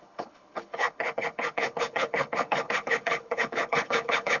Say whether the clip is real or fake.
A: fake